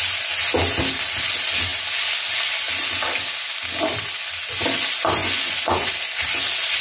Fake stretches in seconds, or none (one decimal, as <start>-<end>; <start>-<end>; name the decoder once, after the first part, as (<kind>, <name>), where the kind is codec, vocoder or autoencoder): 5.2-5.9 (vocoder, Vocos)